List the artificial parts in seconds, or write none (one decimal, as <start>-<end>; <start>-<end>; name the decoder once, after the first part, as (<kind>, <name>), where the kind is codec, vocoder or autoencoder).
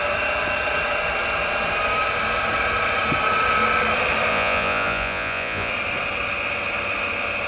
4.3-5.7 (vocoder, Vocos)